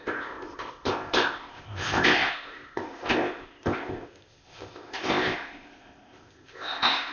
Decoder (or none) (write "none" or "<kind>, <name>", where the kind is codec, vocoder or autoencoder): codec, ZipCodec